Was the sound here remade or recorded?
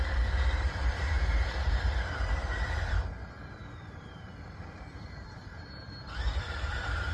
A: remade